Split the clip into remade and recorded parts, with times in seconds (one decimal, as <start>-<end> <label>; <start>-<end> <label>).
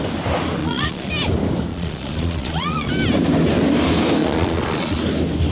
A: 0.0-0.6 recorded; 0.6-1.1 remade; 1.1-1.7 recorded; 1.7-2.9 remade; 2.9-4.2 recorded; 4.2-5.0 remade; 5.0-5.5 recorded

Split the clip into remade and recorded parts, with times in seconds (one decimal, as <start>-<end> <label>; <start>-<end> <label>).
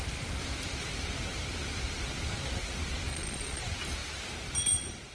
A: 0.0-3.1 recorded; 3.1-3.6 remade; 3.6-5.1 recorded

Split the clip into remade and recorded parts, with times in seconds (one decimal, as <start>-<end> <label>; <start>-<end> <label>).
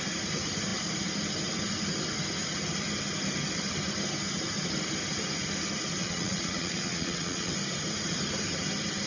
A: 0.0-6.0 recorded; 6.0-7.5 remade; 7.5-9.1 recorded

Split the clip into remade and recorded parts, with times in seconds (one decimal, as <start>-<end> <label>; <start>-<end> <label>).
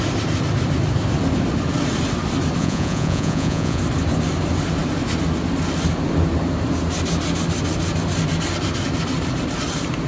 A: 0.0-2.6 recorded; 2.6-3.8 remade; 3.8-10.1 recorded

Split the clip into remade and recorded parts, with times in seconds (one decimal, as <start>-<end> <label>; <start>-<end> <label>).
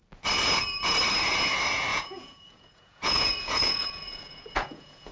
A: 0.0-1.9 recorded; 1.9-5.1 remade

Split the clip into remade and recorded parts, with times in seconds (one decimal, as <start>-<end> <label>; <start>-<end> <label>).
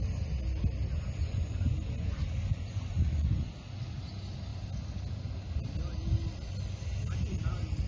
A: 0.0-1.2 recorded; 1.2-3.5 remade; 3.5-7.9 recorded